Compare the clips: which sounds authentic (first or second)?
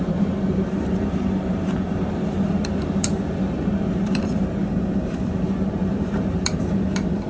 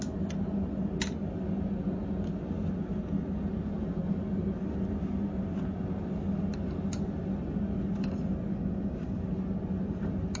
second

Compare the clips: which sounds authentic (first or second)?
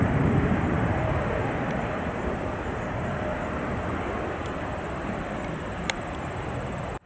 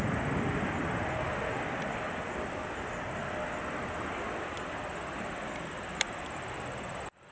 second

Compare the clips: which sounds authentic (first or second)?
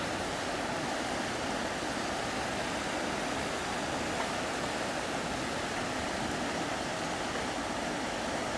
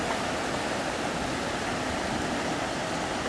first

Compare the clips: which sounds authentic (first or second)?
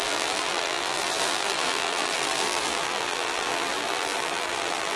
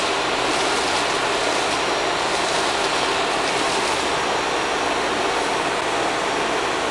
second